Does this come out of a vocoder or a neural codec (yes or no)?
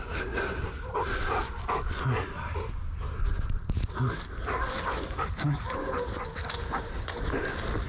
no